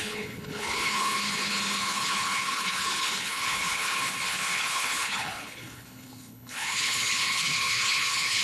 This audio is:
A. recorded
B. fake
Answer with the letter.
B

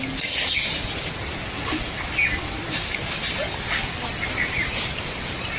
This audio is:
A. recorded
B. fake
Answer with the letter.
A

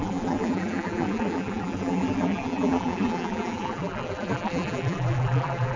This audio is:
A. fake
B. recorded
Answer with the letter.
A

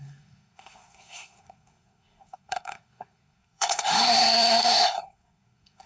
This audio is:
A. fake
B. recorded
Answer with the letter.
A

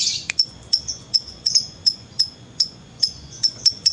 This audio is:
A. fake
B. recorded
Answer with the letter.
A